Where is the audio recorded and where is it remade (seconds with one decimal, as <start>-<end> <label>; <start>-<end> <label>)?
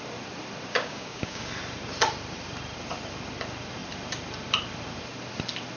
0.0-0.7 recorded; 0.7-1.5 remade; 1.5-5.8 recorded